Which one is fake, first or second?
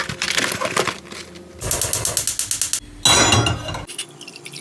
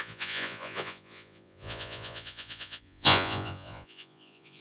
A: second